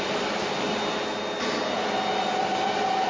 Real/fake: real